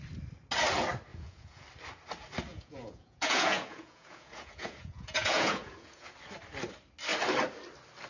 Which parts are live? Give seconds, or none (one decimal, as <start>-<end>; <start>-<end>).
0.0-1.1; 1.6-2.5; 6.1-8.1